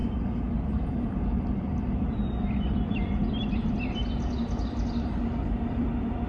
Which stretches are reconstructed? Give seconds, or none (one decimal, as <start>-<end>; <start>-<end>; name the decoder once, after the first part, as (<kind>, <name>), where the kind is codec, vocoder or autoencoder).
0.7-6.3 (vocoder, BigVGAN v2)